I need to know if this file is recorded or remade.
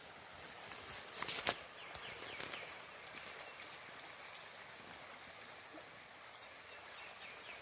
recorded